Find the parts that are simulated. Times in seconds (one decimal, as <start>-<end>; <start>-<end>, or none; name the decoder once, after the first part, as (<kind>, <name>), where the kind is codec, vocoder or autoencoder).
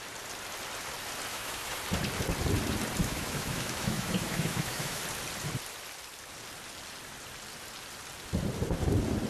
1.3-1.8 (autoencoder, DAC-VAE); 3.0-5.0